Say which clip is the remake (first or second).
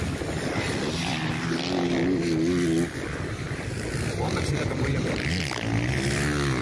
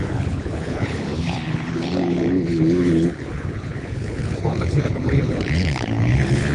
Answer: second